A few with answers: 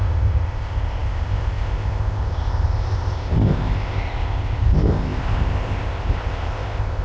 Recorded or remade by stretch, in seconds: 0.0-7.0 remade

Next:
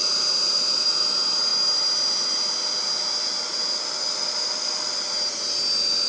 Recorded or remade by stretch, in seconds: 0.0-6.1 recorded